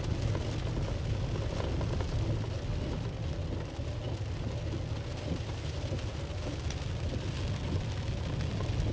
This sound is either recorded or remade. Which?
recorded